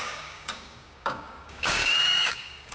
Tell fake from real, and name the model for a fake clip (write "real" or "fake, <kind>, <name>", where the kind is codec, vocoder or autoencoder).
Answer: fake, codec, DAC